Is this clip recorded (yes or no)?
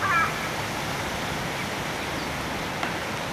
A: yes